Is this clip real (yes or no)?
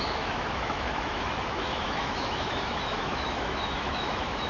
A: no